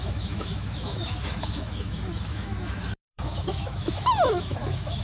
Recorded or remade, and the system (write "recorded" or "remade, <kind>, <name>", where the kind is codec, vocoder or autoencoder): remade, autoencoder, DAC-VAE